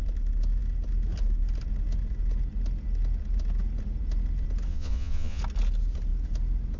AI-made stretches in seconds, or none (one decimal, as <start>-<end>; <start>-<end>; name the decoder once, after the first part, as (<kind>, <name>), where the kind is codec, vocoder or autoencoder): 4.7-5.4 (vocoder, Vocos)